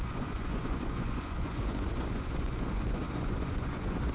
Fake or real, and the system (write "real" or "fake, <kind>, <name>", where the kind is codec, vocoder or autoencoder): fake, vocoder, Vocos